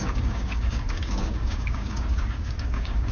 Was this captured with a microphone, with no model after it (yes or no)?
no